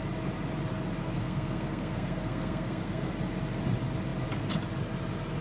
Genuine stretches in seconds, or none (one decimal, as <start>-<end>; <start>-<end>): 0.0-1.0; 3.1-5.4